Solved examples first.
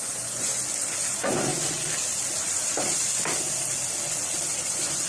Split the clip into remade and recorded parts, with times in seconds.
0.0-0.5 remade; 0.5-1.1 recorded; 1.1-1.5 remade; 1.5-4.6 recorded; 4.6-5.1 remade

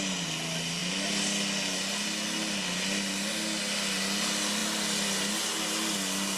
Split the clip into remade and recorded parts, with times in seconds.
0.0-6.4 recorded